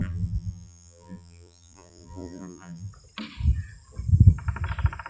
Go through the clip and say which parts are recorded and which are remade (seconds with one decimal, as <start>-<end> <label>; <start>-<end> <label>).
0.0-2.9 remade; 2.9-5.1 recorded